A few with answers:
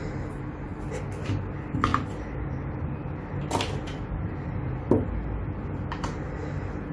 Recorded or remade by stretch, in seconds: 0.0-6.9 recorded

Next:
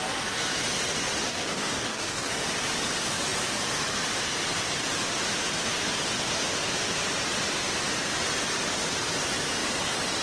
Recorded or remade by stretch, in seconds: 0.0-1.3 recorded; 1.3-2.3 remade; 2.3-10.2 recorded

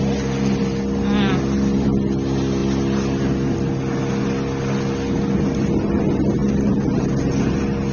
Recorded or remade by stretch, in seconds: 0.0-7.9 recorded

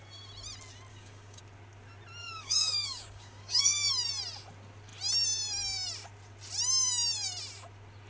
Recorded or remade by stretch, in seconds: 0.0-0.9 recorded; 0.9-1.4 remade; 1.4-2.2 recorded; 2.2-3.9 remade; 3.9-8.1 recorded

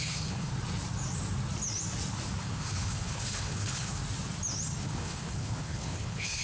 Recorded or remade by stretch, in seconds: 0.0-0.5 remade; 0.5-2.4 recorded; 2.4-4.0 remade; 4.0-4.8 recorded; 4.8-6.4 remade